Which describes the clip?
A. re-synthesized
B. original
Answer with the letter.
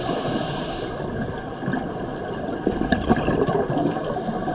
A